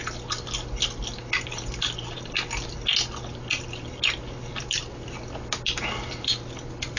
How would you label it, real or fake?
real